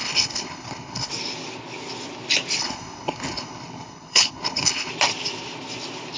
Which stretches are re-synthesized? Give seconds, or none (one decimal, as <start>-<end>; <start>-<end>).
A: 0.0-1.1; 2.6-4.9